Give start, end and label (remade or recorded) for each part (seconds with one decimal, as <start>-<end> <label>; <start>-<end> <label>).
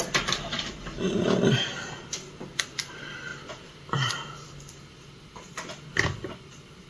0.0-6.9 remade